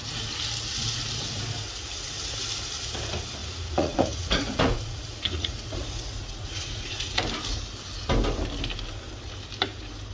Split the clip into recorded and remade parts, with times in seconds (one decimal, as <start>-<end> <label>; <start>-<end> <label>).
0.0-3.4 recorded; 3.4-7.2 remade; 7.2-10.1 recorded